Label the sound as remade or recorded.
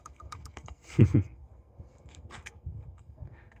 remade